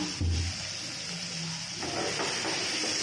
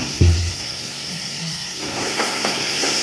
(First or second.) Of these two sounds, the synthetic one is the second